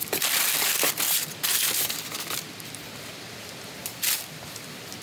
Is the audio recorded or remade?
recorded